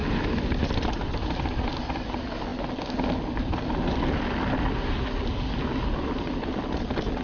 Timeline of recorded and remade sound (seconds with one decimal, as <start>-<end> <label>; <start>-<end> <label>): 0.0-7.2 recorded